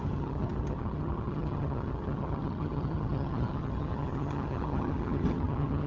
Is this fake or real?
fake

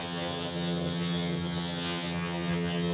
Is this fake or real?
fake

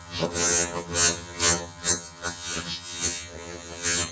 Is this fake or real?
fake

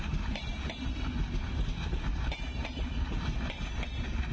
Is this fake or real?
real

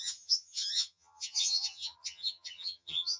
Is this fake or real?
fake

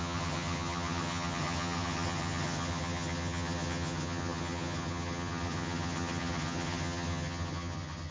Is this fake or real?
fake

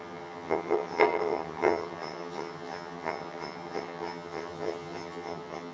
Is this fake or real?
fake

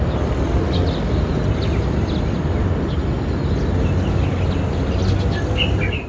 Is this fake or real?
real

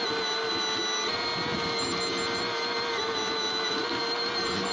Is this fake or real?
real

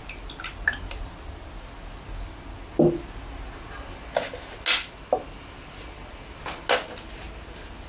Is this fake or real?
real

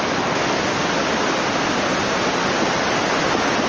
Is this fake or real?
real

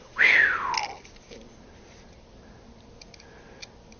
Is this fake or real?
real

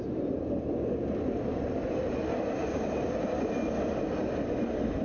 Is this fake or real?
real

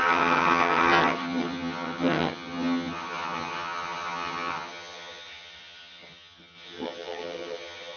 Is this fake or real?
fake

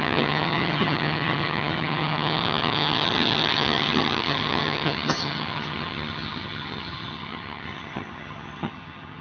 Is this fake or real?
fake